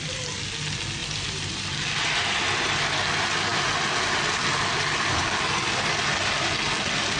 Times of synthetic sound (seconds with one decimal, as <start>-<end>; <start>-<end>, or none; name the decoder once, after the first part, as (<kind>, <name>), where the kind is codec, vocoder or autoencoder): 1.0-2.0 (vocoder, BigVGAN v2)